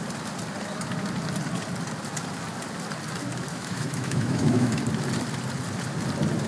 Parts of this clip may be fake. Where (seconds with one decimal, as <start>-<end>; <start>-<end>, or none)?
3.5-4.8